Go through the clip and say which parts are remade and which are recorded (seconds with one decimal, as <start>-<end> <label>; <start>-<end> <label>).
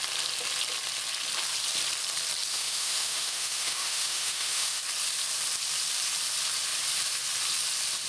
0.0-2.5 recorded; 2.5-4.8 remade; 4.8-8.1 recorded